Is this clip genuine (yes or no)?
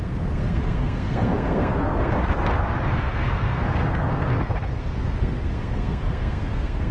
no